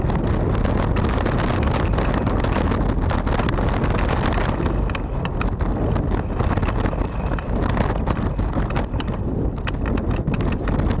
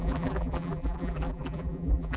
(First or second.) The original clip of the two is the first